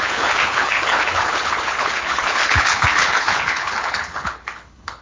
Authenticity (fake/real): fake